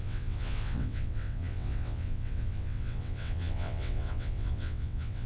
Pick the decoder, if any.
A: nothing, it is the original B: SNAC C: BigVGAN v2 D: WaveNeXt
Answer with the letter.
D